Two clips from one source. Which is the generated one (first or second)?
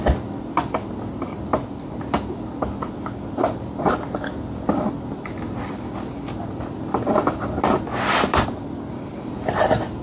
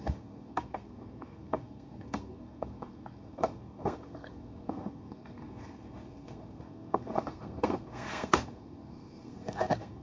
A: second